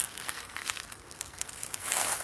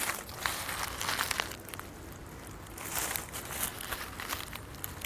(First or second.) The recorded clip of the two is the second